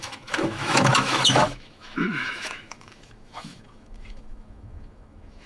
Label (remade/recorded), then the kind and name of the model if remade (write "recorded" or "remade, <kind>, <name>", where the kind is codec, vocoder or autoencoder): remade, autoencoder, DAC-VAE